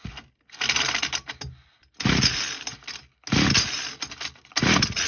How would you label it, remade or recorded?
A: recorded